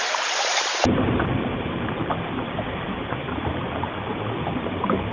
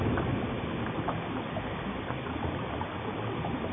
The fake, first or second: first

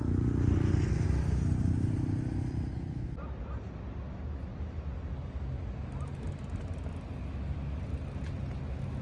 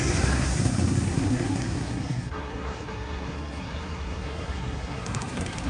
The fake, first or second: second